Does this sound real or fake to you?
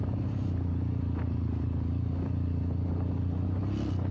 real